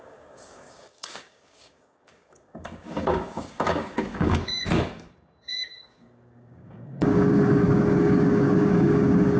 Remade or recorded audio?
remade